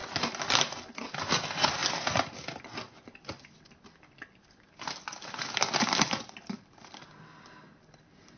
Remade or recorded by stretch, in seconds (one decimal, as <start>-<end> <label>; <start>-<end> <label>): 0.0-8.4 recorded